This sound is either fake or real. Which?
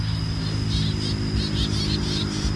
real